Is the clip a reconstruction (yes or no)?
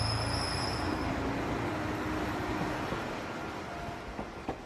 no